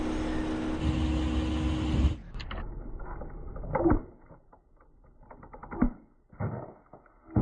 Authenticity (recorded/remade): recorded